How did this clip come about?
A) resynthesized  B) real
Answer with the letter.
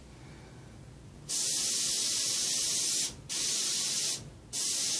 B